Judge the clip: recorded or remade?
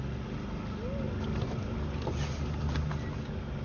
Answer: recorded